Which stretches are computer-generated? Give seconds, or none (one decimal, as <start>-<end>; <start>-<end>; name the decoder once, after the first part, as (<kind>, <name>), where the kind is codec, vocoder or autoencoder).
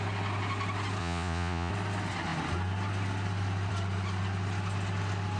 1.0-1.7 (vocoder, Vocos)